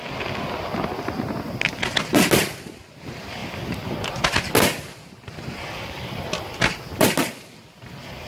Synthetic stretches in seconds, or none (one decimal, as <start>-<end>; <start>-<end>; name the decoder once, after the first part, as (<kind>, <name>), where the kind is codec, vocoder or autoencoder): none